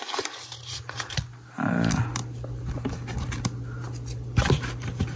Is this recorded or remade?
recorded